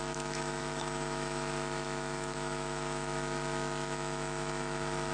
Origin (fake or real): fake